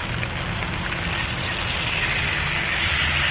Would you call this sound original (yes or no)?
yes